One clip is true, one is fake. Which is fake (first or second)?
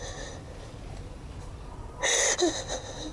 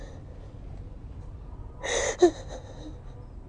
first